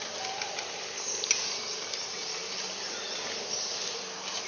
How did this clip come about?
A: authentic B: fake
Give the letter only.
A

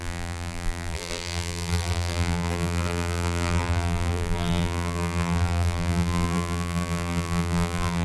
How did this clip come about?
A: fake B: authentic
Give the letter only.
A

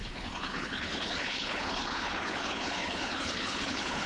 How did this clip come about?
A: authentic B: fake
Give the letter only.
B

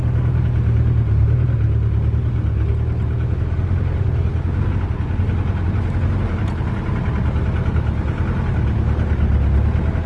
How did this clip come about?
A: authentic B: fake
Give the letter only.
A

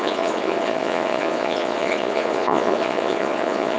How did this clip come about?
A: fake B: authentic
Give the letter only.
A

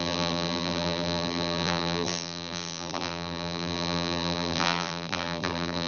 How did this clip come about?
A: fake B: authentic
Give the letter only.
A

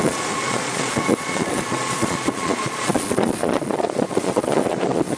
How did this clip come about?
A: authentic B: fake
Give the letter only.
B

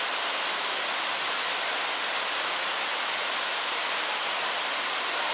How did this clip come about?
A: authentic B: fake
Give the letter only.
A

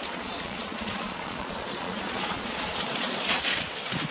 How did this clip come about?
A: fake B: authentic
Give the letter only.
A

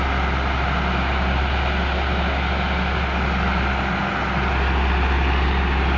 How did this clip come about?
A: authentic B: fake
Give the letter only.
A